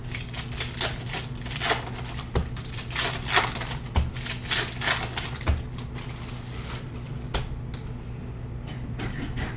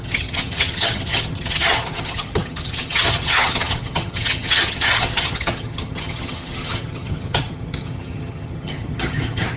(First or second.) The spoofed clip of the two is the second